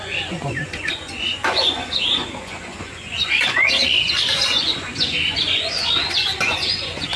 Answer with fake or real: fake